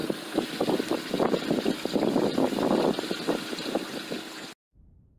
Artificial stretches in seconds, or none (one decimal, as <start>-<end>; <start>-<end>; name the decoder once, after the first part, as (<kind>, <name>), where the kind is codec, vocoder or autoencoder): none